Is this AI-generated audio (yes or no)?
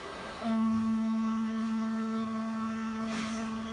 yes